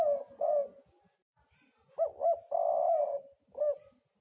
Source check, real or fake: real